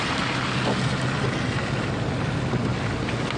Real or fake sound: real